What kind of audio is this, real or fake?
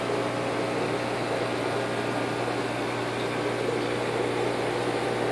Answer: real